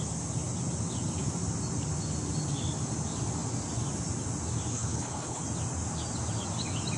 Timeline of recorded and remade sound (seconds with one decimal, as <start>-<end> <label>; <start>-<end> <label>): 0.0-4.7 recorded; 4.7-5.4 remade; 5.4-7.0 recorded